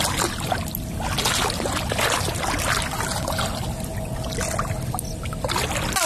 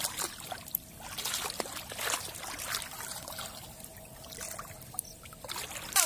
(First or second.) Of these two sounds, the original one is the first